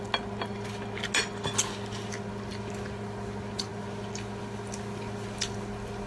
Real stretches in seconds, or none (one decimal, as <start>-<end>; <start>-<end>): 0.0-6.1

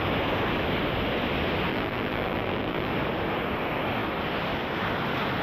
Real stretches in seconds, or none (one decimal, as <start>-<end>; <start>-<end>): 0.0-1.7; 2.9-5.4

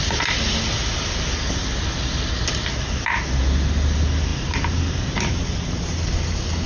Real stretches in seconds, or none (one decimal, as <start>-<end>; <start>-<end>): 0.0-6.7

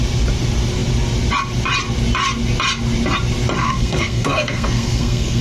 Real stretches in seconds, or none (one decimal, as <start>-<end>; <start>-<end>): 0.0-3.6

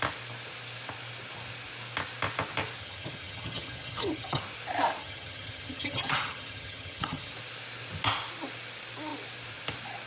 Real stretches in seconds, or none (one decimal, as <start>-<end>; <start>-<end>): 0.0-2.8; 4.4-5.0; 7.3-10.1

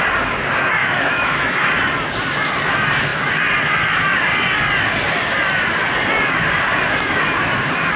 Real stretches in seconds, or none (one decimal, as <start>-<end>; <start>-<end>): 0.0-0.8; 1.7-8.0

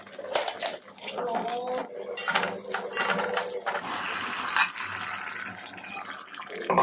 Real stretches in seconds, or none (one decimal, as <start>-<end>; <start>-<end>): 0.0-6.8